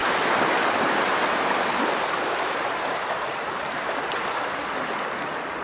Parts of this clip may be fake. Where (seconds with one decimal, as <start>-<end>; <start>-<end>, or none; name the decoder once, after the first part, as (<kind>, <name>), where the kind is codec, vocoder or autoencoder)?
none